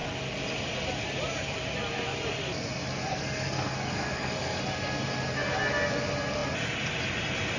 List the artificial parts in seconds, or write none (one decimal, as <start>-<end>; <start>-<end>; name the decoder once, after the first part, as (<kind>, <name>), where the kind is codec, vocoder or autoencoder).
3.1-4.6 (codec, SNAC)

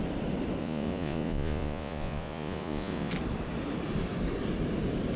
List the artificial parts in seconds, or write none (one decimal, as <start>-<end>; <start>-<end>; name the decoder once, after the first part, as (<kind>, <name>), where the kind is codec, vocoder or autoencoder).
0.6-3.1 (vocoder, Vocos)